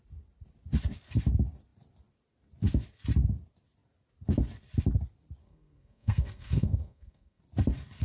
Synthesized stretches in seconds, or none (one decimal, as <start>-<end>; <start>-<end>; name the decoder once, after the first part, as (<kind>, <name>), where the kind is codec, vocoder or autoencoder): 5.4-7.4 (codec, SNAC)